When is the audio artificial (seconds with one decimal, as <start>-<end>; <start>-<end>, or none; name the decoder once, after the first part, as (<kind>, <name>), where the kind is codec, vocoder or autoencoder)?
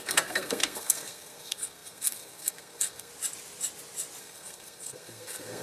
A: 0.0-3.1 (codec, SNAC); 4.2-5.6